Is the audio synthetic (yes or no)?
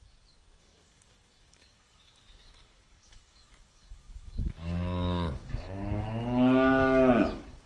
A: yes